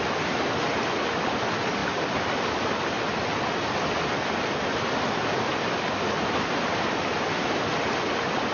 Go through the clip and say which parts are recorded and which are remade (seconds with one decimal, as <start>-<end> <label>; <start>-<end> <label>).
0.0-5.5 recorded; 5.5-7.7 remade; 7.7-8.5 recorded

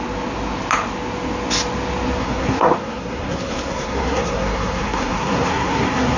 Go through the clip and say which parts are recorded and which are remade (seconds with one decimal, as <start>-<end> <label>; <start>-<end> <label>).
0.0-2.2 recorded; 2.2-6.2 remade

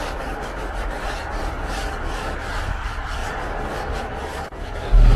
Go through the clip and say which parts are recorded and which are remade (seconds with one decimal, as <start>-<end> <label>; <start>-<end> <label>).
0.0-5.2 remade

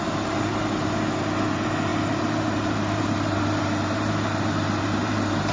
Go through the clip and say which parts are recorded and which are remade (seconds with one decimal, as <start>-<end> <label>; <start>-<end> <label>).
0.0-1.9 recorded; 1.9-5.5 remade

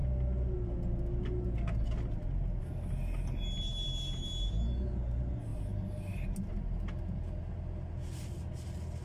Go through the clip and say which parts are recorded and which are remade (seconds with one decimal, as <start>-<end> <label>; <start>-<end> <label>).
0.0-9.0 recorded

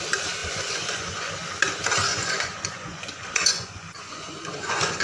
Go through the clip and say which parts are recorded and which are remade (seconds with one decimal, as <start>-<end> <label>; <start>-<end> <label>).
0.0-0.4 recorded; 0.4-1.3 remade; 1.3-2.1 recorded; 2.1-5.0 remade